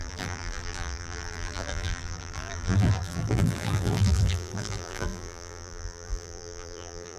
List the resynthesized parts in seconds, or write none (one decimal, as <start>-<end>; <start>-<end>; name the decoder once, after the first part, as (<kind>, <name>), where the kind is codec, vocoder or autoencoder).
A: 0.0-7.2 (vocoder, BigVGAN v2)